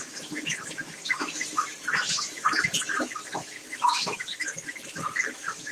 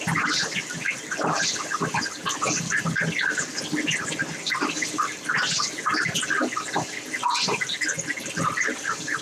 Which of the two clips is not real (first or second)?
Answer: first